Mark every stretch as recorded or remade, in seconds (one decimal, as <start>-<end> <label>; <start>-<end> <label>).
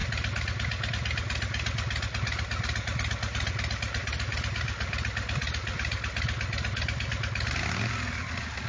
0.0-8.7 recorded